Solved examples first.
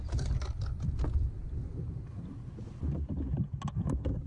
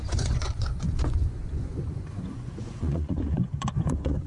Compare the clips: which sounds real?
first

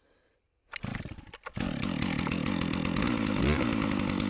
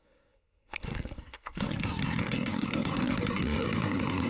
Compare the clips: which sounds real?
first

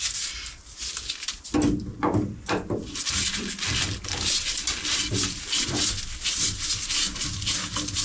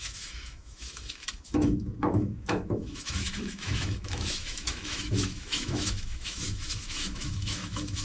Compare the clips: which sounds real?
first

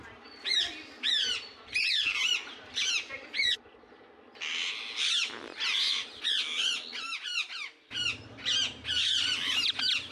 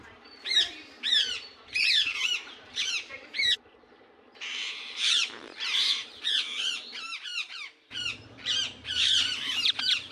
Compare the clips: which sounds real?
first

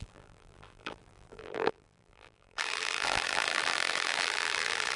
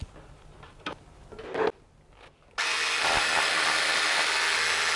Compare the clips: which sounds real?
second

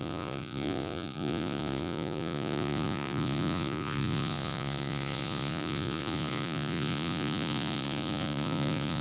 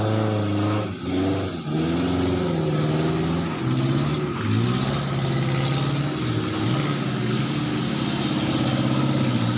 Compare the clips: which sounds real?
second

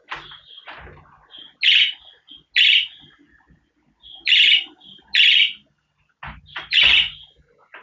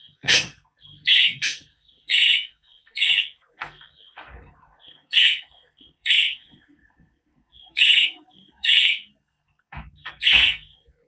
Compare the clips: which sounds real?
first